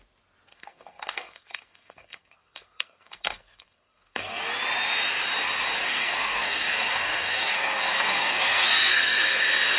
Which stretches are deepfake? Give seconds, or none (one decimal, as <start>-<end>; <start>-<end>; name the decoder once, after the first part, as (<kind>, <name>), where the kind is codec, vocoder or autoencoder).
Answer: 0.5-4.4 (codec, SNAC); 5.8-9.4